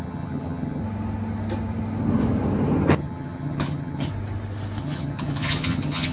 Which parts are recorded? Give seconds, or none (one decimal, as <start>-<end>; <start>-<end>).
0.8-2.9; 4.1-4.8